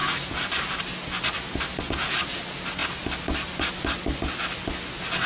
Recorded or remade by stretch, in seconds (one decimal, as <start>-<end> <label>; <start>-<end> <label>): 0.0-5.3 recorded